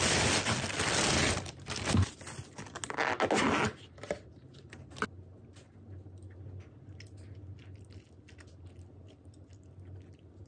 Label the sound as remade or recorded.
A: recorded